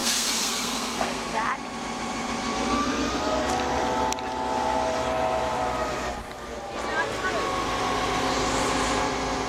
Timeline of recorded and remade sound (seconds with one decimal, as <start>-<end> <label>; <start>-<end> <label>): 0.0-1.4 remade; 1.4-9.5 recorded